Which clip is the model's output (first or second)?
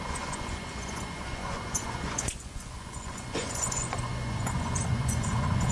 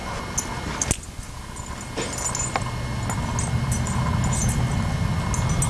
first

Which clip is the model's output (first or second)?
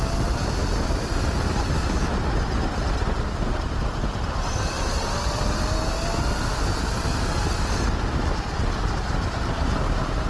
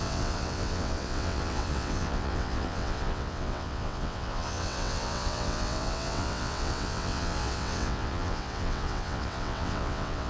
second